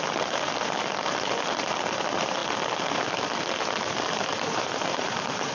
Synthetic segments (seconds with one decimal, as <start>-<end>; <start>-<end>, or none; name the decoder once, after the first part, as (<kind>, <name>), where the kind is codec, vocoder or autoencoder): 4.3-5.1 (vocoder, BigVGAN v2)